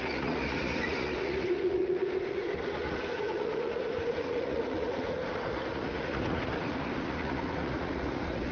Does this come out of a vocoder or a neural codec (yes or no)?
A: yes